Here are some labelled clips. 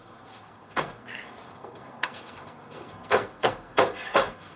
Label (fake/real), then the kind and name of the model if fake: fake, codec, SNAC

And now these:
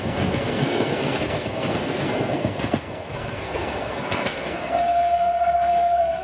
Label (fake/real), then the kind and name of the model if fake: fake, codec, SNAC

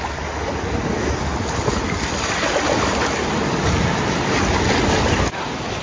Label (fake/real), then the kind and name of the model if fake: real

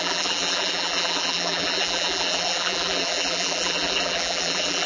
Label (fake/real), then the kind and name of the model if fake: fake, vocoder, BigVGAN v2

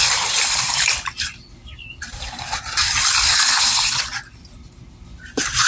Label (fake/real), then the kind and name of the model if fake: fake, vocoder, BigVGAN v2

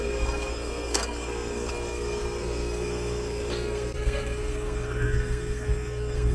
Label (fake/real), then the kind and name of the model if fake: fake, codec, SNAC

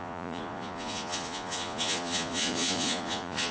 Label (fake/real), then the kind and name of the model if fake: fake, vocoder, Vocos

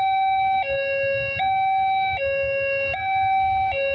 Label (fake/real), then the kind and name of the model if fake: real